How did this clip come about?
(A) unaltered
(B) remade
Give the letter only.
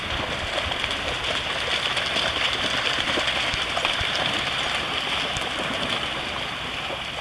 A